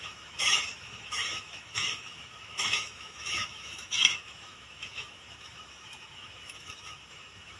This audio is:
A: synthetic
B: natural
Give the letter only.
A